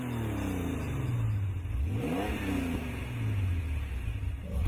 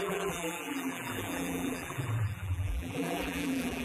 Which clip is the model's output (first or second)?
second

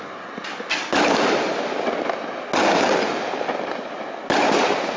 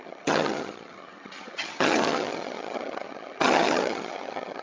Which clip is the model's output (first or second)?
second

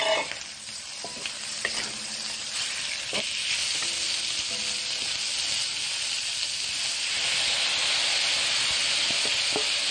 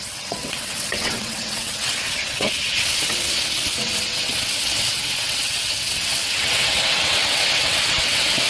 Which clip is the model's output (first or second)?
second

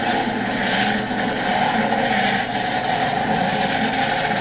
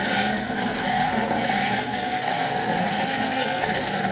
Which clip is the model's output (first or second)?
second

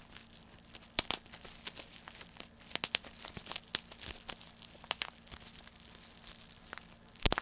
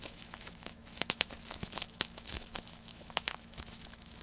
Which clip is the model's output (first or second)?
second